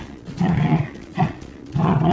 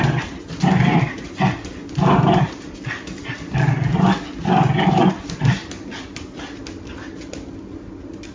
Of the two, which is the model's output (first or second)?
first